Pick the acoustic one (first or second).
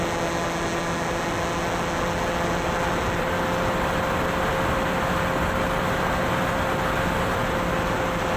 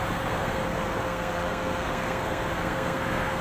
first